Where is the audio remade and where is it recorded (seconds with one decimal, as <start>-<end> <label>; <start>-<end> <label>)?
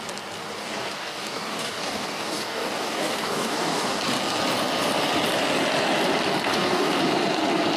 0.0-0.6 recorded; 0.6-4.0 remade; 4.0-6.5 recorded; 6.5-7.0 remade; 7.0-7.8 recorded